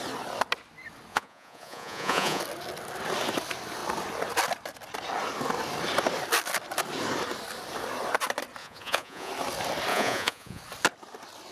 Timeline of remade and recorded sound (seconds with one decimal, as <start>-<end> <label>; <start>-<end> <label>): 0.0-1.1 recorded; 1.1-2.4 remade; 2.4-8.6 recorded; 8.6-9.3 remade; 9.3-9.9 recorded; 9.9-10.6 remade; 10.6-11.5 recorded